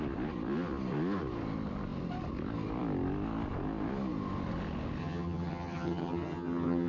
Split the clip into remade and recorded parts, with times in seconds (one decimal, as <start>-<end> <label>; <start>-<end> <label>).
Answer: 0.0-5.0 recorded; 5.0-6.9 remade